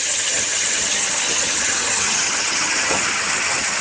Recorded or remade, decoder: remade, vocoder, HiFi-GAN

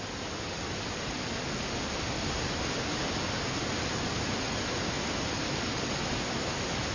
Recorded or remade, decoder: recorded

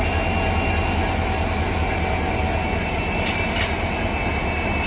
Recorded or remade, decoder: recorded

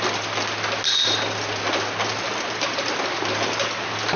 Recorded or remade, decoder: recorded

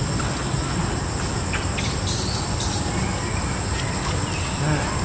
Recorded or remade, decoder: recorded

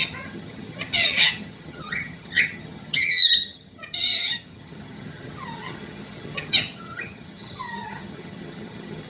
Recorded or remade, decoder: remade, vocoder, HiFi-GAN